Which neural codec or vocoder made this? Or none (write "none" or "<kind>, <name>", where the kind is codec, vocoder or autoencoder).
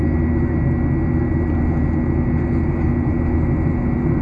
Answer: none